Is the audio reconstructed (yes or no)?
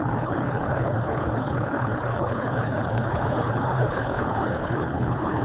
yes